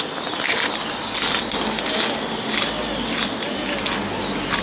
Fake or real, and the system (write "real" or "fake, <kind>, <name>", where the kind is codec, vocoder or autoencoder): real